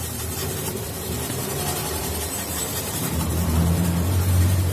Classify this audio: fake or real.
fake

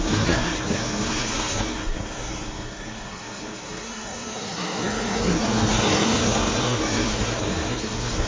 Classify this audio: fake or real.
fake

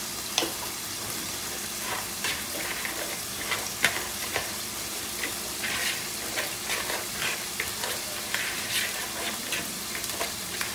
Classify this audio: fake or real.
fake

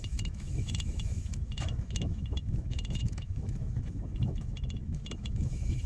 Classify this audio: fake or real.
fake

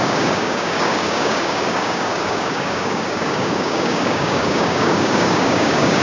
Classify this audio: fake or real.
fake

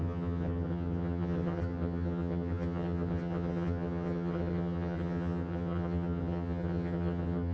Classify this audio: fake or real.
fake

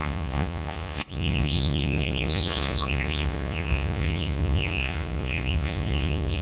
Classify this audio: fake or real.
fake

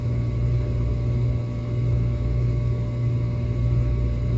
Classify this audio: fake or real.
fake